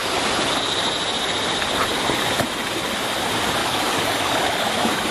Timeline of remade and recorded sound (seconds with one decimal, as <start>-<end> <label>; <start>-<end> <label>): 0.0-3.6 recorded; 3.6-5.1 remade